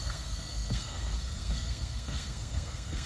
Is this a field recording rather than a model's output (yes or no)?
no